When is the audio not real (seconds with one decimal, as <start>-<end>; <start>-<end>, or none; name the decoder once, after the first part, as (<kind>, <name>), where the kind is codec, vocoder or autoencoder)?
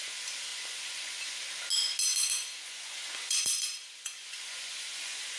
0.5-1.4 (vocoder, Vocos); 2.1-5.4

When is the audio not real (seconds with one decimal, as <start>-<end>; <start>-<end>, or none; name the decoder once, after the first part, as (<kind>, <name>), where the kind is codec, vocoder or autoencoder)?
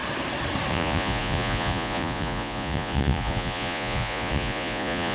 0.7-5.1 (vocoder, Vocos)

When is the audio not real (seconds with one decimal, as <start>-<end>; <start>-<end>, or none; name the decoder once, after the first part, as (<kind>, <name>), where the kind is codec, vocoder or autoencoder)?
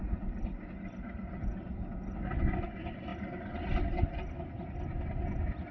none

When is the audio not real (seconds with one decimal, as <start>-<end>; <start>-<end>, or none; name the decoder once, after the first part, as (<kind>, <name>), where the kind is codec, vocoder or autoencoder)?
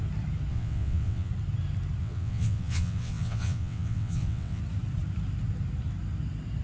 0.5-1.3 (vocoder, WaveNeXt); 2.0-4.6